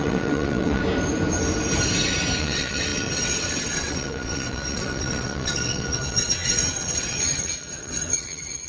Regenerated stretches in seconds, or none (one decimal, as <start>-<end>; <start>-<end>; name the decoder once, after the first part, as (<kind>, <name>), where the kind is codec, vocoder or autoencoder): 0.0-0.8 (vocoder, WaveNeXt); 2.4-8.7